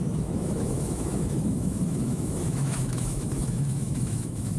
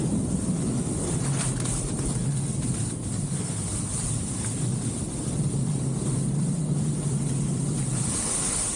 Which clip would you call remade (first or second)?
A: first